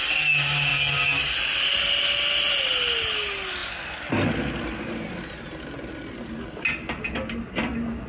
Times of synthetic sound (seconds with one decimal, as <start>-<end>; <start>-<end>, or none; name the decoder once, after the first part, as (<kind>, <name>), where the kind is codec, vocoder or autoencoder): none

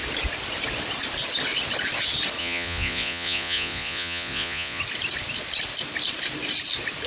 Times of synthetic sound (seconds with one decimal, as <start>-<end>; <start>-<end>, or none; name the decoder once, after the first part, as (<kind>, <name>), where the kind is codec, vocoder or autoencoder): 2.4-4.8 (vocoder, Vocos)

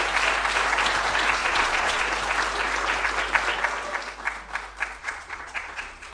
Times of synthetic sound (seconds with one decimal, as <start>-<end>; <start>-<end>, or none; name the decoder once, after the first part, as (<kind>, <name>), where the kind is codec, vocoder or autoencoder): 1.4-2.0 (vocoder, Vocos); 5.0-6.1

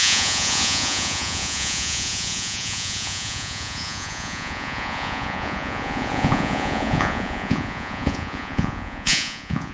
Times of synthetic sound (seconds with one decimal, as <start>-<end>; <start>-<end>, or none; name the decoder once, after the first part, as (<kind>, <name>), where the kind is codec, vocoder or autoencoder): 0.0-9.7 (vocoder, Vocos)

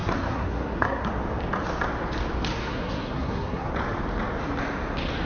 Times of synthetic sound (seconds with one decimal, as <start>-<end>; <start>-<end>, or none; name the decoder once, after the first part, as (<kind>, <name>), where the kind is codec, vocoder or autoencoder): 0.0-1.1 (codec, SNAC); 2.6-3.7